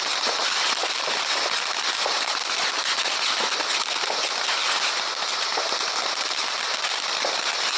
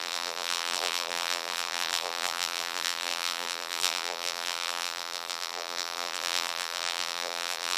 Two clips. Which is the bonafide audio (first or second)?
first